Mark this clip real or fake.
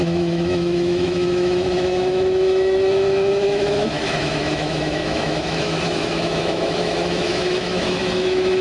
fake